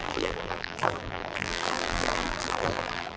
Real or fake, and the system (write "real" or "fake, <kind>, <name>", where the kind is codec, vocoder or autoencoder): fake, vocoder, BigVGAN v2